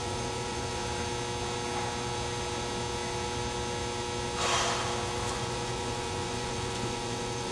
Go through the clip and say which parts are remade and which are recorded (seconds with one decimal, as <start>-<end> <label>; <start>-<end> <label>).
0.0-0.8 remade; 0.8-5.3 recorded; 5.3-7.5 remade